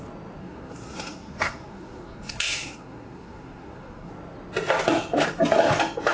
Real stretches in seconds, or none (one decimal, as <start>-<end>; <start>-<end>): 0.0-0.4; 4.1-6.1